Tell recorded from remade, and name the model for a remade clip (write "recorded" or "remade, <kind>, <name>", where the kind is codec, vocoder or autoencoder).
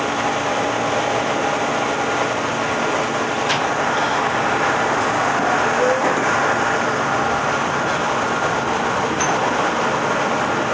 recorded